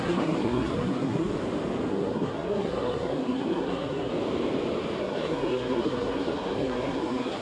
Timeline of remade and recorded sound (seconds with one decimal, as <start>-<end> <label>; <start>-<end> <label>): 0.0-1.3 remade; 1.3-1.9 recorded; 1.9-4.1 remade; 4.1-5.0 recorded; 5.0-7.4 remade